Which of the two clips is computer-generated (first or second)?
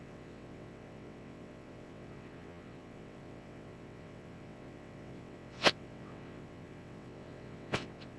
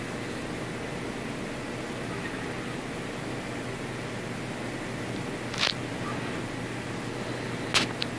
first